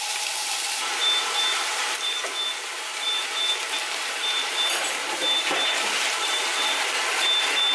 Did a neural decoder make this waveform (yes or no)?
yes